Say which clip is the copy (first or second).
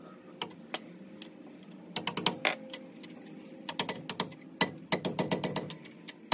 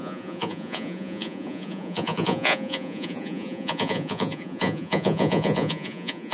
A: second